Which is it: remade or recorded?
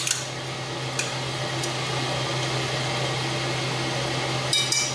recorded